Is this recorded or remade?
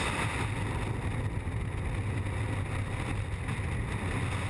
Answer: recorded